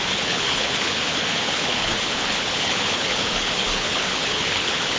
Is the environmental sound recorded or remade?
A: remade